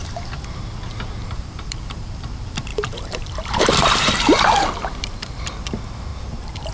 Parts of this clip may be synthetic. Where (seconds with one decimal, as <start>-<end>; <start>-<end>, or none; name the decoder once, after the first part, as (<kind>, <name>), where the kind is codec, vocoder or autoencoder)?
1.2-2.2 (vocoder, BigVGAN v2); 2.7-4.1; 6.1-6.7